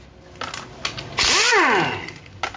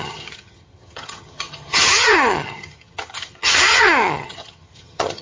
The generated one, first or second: second